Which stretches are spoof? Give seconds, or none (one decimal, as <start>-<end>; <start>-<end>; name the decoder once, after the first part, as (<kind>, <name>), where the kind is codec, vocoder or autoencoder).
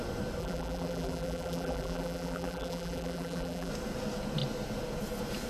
0.4-3.7 (vocoder, BigVGAN v2)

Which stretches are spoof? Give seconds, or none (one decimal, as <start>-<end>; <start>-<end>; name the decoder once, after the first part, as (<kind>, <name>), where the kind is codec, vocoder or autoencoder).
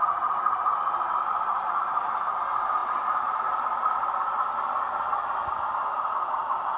none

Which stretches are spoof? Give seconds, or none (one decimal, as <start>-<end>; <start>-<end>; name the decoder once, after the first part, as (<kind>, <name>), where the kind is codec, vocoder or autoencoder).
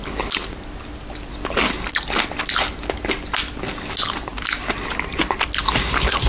none